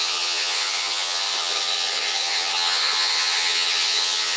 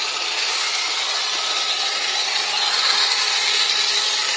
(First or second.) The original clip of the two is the second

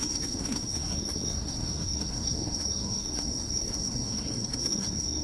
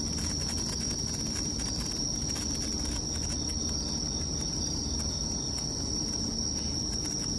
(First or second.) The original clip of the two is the second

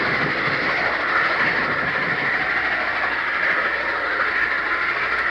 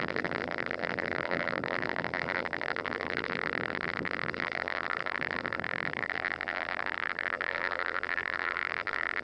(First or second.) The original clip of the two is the first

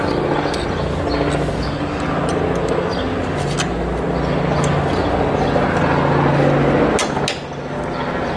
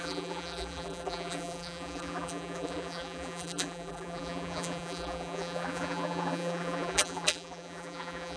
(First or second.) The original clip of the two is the first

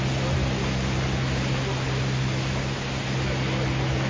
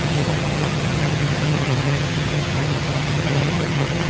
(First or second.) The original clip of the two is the first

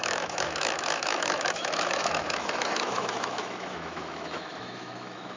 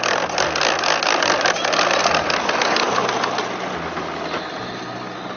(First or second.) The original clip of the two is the second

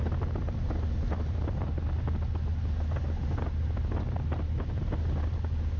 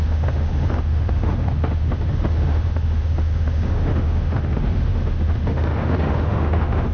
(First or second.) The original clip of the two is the first